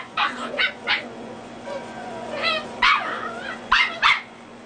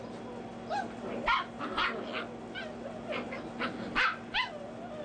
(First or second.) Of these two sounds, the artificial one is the first